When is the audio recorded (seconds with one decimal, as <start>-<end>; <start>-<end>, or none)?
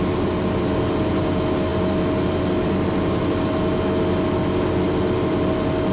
0.0-5.9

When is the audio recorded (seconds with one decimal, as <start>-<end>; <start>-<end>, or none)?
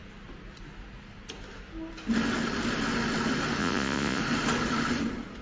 0.0-3.6; 4.2-5.4